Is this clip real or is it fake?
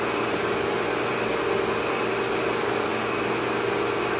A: real